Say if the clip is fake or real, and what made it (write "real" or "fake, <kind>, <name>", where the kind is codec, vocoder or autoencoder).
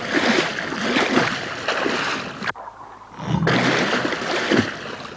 real